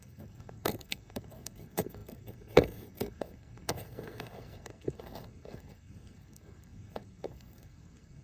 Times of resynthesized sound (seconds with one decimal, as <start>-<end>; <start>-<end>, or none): 0.0-8.2